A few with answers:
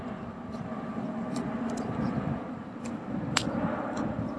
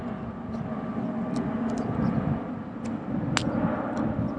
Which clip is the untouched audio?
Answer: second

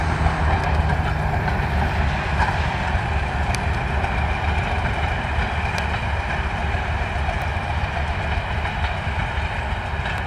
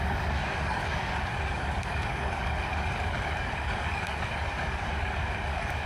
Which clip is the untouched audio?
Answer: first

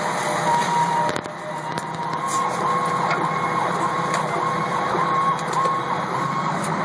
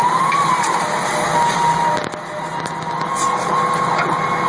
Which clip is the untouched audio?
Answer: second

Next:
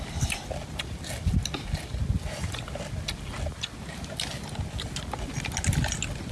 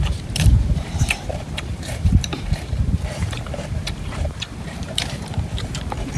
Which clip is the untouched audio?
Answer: first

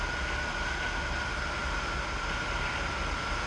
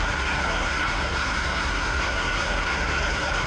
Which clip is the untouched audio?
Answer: first